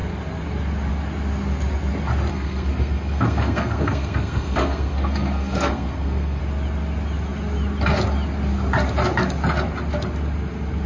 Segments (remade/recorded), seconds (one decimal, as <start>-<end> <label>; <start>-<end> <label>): 0.0-2.3 recorded; 2.3-6.4 remade; 6.4-10.9 recorded